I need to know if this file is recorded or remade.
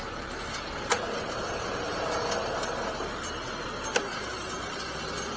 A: recorded